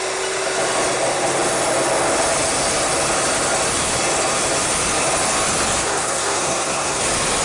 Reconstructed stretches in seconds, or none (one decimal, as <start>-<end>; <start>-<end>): 5.8-7.0